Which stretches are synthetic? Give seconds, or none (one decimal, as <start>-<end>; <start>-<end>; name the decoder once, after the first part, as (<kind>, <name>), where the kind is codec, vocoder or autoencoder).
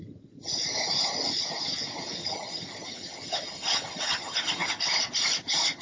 2.2-4.8 (vocoder, HiFi-GAN)